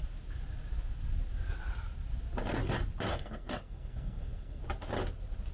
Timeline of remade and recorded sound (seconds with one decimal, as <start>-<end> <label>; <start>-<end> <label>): 0.0-3.1 recorded; 3.1-4.6 remade; 4.6-5.5 recorded